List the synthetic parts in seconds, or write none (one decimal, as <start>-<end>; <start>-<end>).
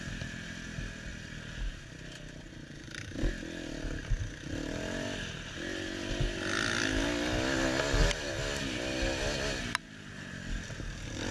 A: none